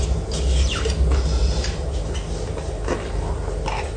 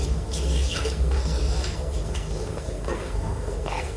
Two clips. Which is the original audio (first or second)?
first